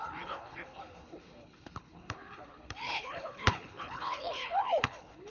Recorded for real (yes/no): no